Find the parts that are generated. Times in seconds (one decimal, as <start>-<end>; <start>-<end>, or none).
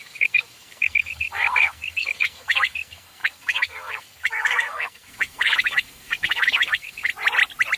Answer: 0.0-7.1